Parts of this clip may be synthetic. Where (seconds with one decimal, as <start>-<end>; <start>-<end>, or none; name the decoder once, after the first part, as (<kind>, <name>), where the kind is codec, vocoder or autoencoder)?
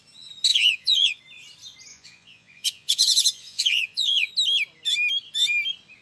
0.5-1.2 (vocoder, Vocos); 1.9-4.3